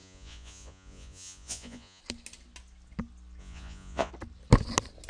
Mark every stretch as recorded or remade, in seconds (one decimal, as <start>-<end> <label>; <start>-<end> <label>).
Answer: 0.0-2.0 remade; 2.0-3.4 recorded; 3.4-4.1 remade; 4.1-5.1 recorded